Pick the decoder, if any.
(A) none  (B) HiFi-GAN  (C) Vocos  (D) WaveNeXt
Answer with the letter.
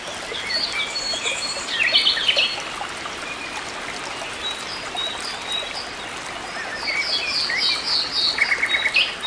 A